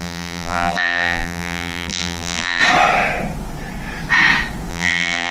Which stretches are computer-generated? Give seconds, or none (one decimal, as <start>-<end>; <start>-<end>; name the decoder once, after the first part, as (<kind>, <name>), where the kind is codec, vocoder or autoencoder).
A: 0.0-2.6 (vocoder, BigVGAN v2); 4.7-5.3